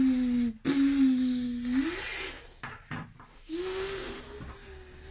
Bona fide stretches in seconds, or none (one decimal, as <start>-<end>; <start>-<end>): 0.0-3.3; 4.2-5.1